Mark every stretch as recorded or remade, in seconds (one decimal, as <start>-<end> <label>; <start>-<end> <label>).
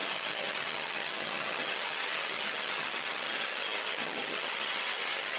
0.0-5.4 remade